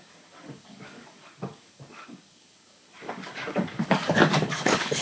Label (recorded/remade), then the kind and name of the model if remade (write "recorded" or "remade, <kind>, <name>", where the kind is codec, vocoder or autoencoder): remade, codec, DAC